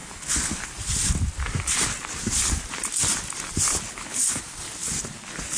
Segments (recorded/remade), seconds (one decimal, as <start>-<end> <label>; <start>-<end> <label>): 0.0-0.7 remade; 0.7-3.7 recorded; 3.7-4.3 remade; 4.3-5.6 recorded